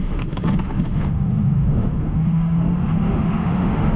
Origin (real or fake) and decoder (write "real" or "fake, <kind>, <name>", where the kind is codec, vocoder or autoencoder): fake, autoencoder, DAC-VAE